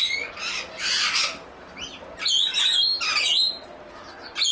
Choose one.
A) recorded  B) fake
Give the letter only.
A